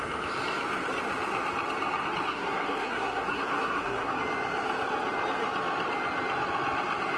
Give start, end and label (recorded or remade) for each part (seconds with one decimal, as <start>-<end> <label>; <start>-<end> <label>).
0.0-2.3 recorded; 2.3-4.1 remade; 4.1-7.2 recorded